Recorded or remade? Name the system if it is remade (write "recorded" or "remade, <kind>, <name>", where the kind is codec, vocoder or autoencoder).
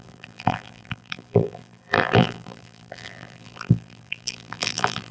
remade, vocoder, BigVGAN v2